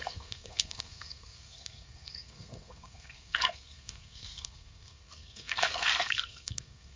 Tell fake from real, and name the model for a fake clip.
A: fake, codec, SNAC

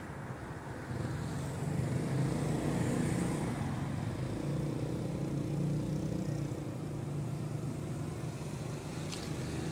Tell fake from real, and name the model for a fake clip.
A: real